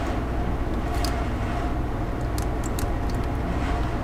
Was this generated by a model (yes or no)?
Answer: no